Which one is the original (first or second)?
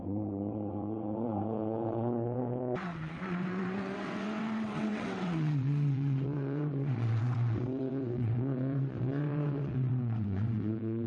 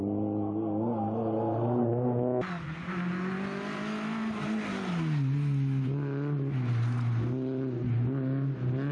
second